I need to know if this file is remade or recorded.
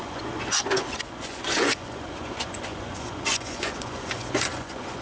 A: remade